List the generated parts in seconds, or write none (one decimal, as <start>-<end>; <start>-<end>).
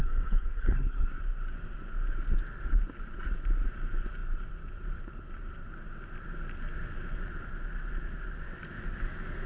0.0-1.1